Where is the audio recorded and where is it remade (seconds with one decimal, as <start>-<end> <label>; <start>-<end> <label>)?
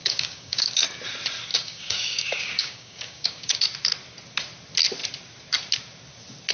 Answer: 0.0-0.7 remade; 0.7-1.5 recorded; 1.5-3.6 remade; 3.6-6.5 recorded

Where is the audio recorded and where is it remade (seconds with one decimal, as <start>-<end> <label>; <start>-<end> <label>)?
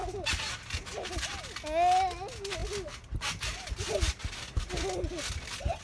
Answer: 0.0-5.8 recorded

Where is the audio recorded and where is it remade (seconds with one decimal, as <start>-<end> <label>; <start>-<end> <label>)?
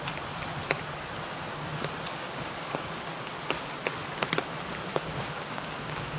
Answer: 0.0-2.1 recorded; 2.1-3.0 remade; 3.0-4.9 recorded; 4.9-6.2 remade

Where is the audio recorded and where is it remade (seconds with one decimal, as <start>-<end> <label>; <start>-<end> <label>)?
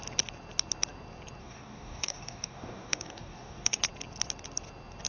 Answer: 0.0-1.4 recorded; 1.4-3.8 remade; 3.8-5.1 recorded